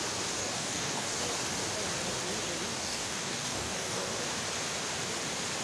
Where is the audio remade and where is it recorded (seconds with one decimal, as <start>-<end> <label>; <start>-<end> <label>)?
0.0-0.4 recorded; 0.4-1.2 remade; 1.2-2.7 recorded; 2.7-4.1 remade; 4.1-5.6 recorded

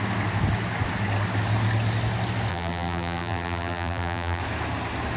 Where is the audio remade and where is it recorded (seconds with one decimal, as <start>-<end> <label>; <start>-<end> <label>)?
0.0-2.5 recorded; 2.5-4.4 remade; 4.4-5.2 recorded

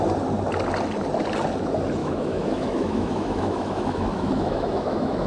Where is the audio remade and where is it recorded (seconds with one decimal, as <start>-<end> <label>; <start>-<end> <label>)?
0.0-2.0 recorded; 2.0-5.3 remade

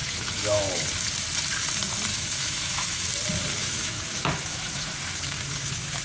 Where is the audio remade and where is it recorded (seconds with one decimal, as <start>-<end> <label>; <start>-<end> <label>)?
0.0-0.6 remade; 0.6-2.1 recorded; 2.1-3.1 remade; 3.1-3.6 recorded; 3.6-6.0 remade

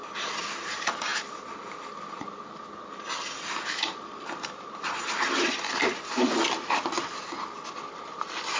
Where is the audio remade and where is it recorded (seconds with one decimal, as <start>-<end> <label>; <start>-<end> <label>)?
0.0-8.6 recorded